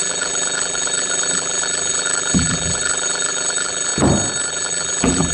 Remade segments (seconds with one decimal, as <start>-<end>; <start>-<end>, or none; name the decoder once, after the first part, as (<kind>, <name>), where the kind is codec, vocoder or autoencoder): 0.0-3.9 (vocoder, BigVGAN v2); 4.5-5.3